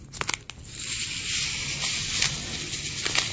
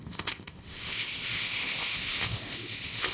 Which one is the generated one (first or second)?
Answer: second